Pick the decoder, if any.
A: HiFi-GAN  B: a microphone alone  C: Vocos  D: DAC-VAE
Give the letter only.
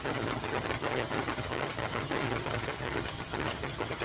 A